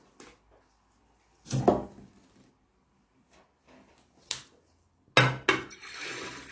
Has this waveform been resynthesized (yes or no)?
no